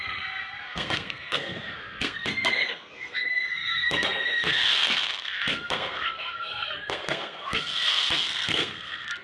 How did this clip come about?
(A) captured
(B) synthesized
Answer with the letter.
B